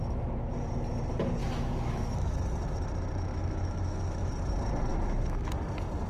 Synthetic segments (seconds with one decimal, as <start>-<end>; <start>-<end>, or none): 1.4-2.4; 3.3-4.3; 4.9-5.5